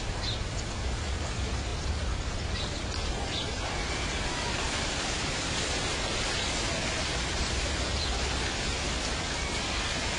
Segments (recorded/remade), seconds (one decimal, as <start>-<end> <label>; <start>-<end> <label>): 0.0-10.2 recorded